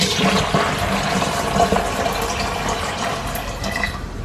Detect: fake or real real